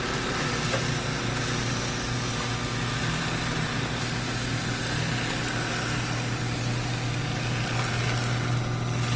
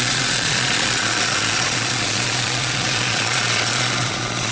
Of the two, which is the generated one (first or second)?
second